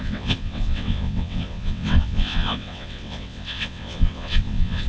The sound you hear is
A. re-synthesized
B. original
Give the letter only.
A